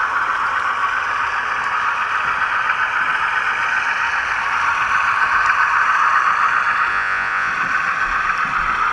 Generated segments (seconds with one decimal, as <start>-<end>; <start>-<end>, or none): 6.9-7.5